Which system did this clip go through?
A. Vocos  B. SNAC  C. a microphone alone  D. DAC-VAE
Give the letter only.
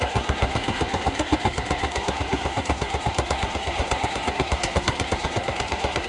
B